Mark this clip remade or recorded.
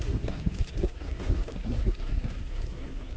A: remade